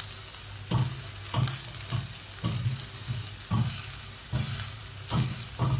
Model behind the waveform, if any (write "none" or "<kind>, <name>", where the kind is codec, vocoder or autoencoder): none